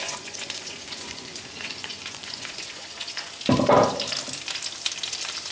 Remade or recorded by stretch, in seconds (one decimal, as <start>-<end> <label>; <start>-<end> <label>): 0.0-3.3 remade; 3.3-5.5 recorded